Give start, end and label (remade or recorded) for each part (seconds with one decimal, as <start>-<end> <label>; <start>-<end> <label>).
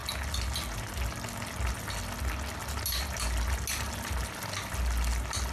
0.0-5.5 recorded